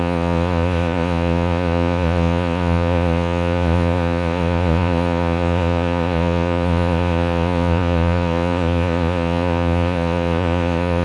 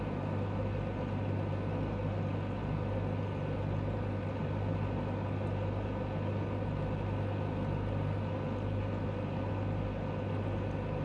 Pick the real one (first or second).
second